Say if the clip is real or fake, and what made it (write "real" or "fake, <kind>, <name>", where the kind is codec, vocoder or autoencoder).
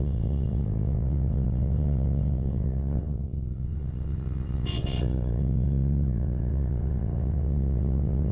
fake, vocoder, WaveNeXt